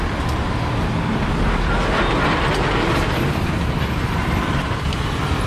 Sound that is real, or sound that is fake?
fake